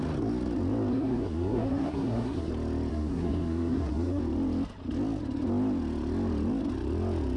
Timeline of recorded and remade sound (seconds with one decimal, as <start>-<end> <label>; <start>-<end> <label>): 0.0-0.9 recorded; 0.9-2.5 remade; 2.5-2.9 recorded; 2.9-4.2 remade; 4.2-7.4 recorded